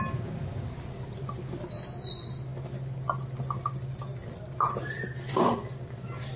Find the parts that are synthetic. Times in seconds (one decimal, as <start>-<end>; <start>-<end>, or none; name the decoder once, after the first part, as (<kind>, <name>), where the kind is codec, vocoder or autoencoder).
none